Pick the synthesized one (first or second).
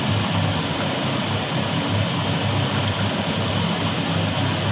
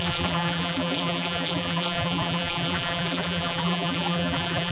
second